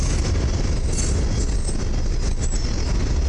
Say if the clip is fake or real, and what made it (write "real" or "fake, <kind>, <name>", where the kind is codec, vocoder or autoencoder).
real